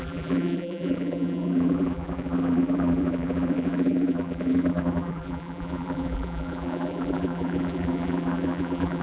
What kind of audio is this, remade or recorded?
remade